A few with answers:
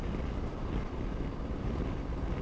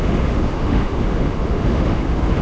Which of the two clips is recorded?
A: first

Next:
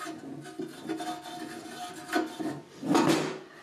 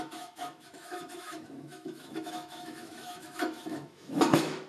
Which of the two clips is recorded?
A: first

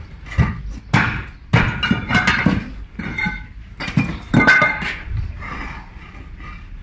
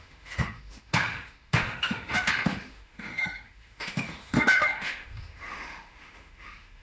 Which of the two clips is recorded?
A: first